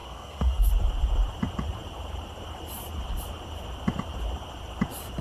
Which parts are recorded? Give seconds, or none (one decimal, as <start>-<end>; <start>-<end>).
0.7-5.2

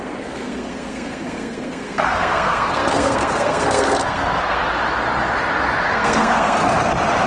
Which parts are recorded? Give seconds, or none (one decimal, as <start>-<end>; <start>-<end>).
4.6-5.9; 6.6-7.3

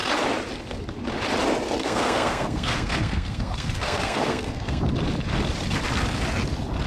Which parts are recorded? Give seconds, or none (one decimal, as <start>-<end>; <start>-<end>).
0.0-1.8; 4.8-6.9

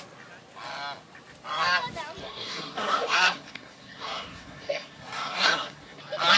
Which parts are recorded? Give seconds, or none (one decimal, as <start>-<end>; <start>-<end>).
0.0-2.2; 6.0-6.4

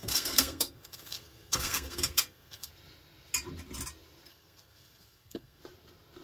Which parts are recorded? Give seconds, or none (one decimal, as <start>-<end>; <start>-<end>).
2.7-4.3; 5.6-6.2

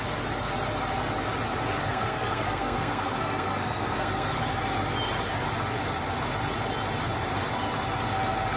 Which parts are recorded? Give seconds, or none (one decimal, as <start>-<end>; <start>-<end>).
0.0-1.9; 4.4-8.6

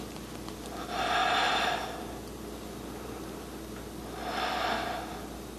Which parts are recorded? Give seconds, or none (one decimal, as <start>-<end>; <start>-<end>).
0.0-5.6

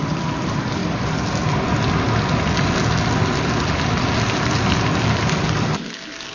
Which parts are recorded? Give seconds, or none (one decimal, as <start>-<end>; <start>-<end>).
0.0-6.3